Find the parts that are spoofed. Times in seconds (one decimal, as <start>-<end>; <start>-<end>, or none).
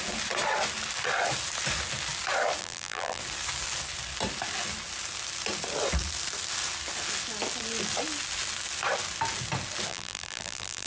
2.6-3.2; 9.9-10.9